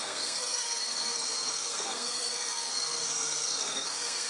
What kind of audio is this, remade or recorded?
remade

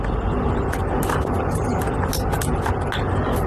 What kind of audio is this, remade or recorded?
recorded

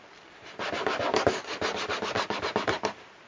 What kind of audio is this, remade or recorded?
recorded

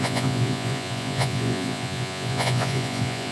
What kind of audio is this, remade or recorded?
remade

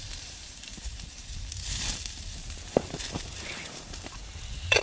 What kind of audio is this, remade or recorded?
remade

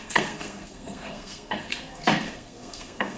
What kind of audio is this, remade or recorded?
remade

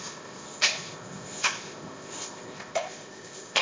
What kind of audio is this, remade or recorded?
remade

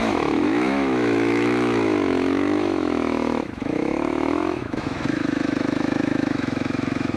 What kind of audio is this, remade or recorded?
remade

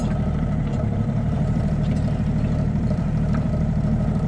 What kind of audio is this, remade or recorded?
remade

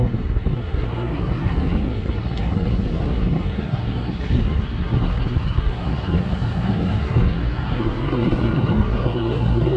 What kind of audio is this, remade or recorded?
remade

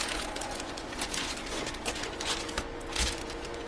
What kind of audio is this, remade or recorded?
remade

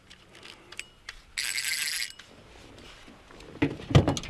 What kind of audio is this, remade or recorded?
recorded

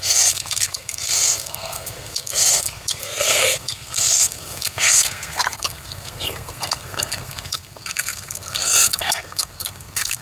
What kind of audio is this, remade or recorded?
remade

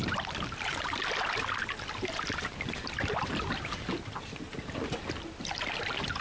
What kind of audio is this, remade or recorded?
recorded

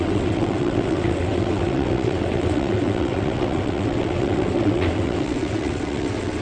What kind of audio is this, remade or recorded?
remade